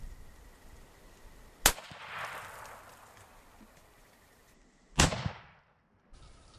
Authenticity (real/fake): real